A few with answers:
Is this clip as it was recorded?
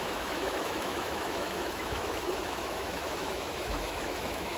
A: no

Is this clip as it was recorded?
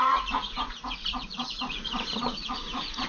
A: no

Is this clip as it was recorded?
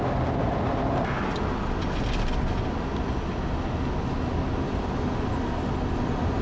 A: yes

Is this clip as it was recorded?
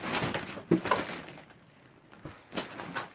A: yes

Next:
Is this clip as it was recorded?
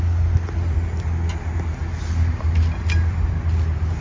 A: yes